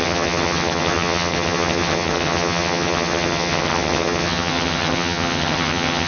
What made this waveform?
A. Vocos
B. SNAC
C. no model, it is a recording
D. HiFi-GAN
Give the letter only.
D